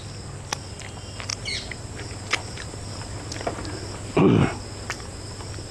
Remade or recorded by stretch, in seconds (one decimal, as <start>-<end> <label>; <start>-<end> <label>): 0.0-5.7 recorded